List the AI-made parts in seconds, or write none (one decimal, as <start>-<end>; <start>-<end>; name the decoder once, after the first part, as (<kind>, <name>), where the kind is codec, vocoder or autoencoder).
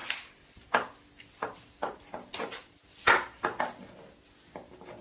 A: none